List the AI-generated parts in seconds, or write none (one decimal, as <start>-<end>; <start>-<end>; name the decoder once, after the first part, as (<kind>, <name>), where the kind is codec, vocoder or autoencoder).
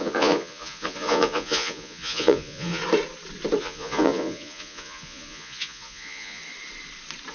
0.0-2.8 (vocoder, Vocos); 3.6-6.4